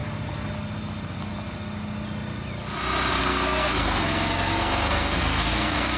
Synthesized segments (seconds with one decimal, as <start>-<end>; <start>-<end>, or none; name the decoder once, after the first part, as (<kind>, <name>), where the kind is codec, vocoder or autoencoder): 3.2-6.0 (codec, SNAC)